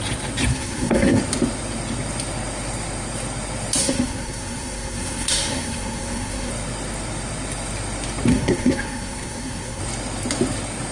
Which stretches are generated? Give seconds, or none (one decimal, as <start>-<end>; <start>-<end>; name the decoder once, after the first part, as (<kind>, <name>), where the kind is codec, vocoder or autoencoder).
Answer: 0.5-1.2 (codec, SNAC); 3.8-6.5; 8.3-9.8